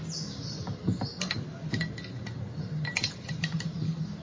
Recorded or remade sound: recorded